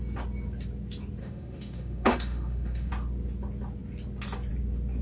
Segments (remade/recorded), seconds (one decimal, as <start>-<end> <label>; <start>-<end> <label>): 0.0-1.2 recorded; 1.2-2.9 remade; 2.9-5.0 recorded